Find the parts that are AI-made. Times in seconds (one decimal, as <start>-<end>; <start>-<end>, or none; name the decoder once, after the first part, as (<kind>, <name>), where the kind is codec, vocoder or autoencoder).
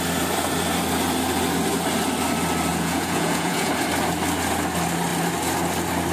2.7-3.7 (vocoder, Vocos)